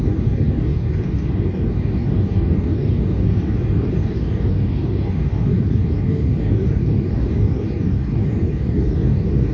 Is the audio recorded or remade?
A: remade